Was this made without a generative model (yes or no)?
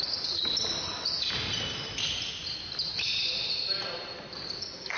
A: yes